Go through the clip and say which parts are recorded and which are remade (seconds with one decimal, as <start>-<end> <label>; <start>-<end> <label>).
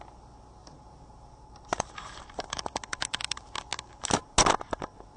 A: 0.0-0.6 recorded; 0.6-2.6 remade; 2.6-5.2 recorded